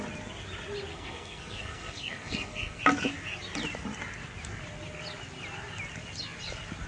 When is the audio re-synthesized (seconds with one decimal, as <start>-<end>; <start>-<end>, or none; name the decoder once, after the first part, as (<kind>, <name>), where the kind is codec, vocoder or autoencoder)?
0.9-2.8 (codec, SNAC)